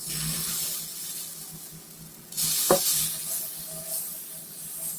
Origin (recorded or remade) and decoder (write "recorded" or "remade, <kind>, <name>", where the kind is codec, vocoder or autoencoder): recorded